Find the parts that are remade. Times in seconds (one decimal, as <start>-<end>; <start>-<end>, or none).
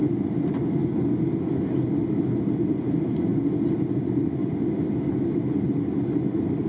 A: none